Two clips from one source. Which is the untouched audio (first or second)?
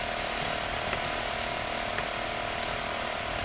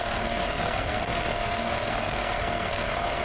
first